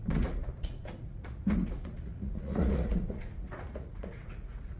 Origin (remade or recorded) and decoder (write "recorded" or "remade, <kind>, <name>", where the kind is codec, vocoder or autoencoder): remade, vocoder, Vocos